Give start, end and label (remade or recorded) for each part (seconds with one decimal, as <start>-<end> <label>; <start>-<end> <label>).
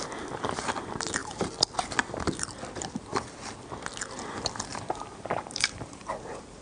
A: 0.0-4.7 recorded; 4.7-6.6 remade